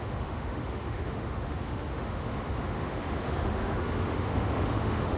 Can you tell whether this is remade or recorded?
remade